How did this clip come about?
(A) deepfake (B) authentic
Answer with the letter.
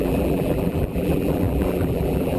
A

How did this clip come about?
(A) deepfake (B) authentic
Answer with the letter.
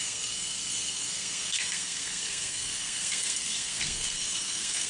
A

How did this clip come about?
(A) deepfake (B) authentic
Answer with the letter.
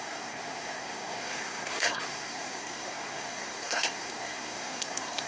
A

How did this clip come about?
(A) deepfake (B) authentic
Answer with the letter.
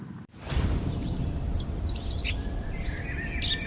B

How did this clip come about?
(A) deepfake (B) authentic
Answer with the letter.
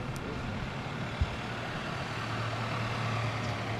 B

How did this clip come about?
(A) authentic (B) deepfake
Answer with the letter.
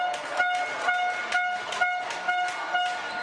A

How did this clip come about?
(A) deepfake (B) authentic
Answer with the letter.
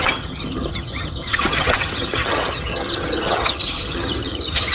A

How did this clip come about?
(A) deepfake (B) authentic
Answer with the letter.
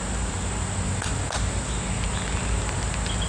B